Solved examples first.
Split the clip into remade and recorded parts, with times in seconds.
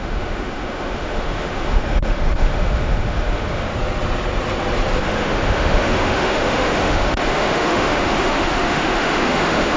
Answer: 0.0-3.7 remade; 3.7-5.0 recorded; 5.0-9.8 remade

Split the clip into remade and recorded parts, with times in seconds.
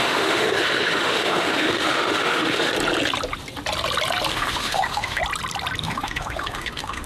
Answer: 0.0-2.7 remade; 2.7-4.3 recorded; 4.3-5.2 remade; 5.2-5.8 recorded; 5.8-7.1 remade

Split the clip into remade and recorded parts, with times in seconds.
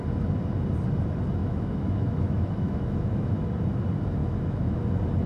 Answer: 0.0-1.4 recorded; 1.4-3.4 remade; 3.4-4.2 recorded; 4.2-4.8 remade; 4.8-5.3 recorded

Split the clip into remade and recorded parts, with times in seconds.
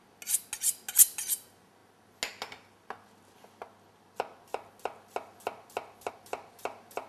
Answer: 0.0-7.1 recorded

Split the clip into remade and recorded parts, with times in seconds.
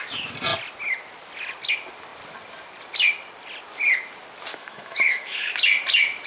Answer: 0.0-4.5 recorded; 4.5-5.5 remade; 5.5-6.3 recorded